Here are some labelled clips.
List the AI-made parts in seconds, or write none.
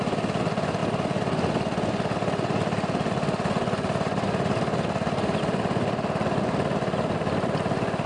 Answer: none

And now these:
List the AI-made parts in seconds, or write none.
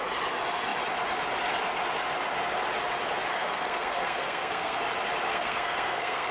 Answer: 3.3-4.8 (codec, SNAC); 5.3-6.3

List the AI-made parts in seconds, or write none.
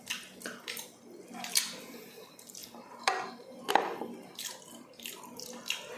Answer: none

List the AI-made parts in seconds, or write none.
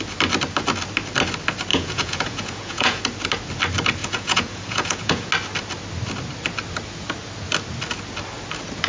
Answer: 1.7-3.0 (vocoder, Vocos); 4.0-5.3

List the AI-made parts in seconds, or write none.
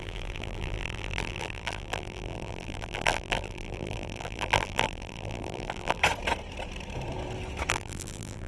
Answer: 0.0-6.0 (vocoder, BigVGAN v2); 7.7-8.5